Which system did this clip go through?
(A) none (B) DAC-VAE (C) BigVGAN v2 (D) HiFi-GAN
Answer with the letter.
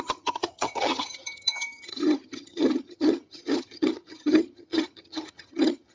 D